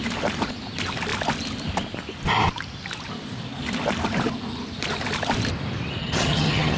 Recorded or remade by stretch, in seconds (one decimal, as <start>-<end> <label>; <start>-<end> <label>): 0.0-6.0 recorded; 6.0-6.8 remade